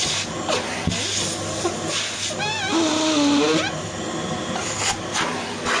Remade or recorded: recorded